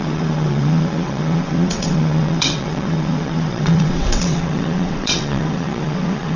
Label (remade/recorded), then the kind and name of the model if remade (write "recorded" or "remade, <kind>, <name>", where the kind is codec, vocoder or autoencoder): remade, vocoder, WaveNeXt